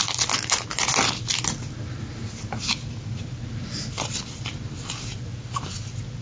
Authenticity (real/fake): real